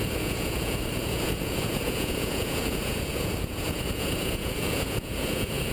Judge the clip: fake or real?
fake